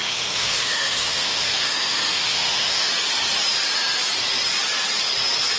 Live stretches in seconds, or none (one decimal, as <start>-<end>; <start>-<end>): 2.9-5.6